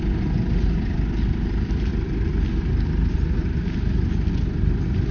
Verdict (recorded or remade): recorded